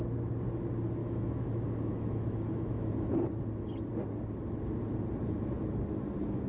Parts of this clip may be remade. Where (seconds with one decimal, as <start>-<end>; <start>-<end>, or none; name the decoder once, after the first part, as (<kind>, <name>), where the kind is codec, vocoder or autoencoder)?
1.0-2.9 (autoencoder, DAC-VAE)